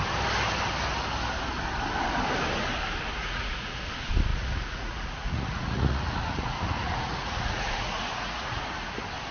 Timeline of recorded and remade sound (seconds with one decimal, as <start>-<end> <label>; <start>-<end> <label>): 0.0-3.1 recorded; 3.1-3.8 remade; 3.8-4.3 recorded; 4.3-8.6 remade; 8.6-9.3 recorded